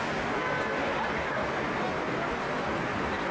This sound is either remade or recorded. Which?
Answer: recorded